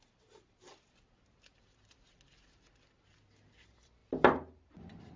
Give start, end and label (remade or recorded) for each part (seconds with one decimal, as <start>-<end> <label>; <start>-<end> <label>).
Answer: 0.0-5.2 recorded